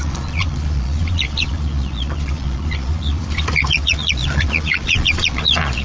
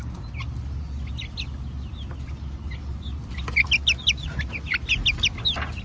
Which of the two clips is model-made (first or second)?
first